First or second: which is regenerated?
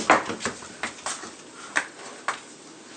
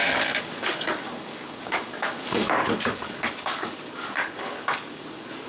second